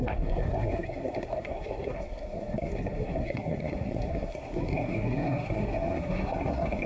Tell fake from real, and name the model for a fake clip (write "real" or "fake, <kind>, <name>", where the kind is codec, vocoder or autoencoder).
fake, codec, SNAC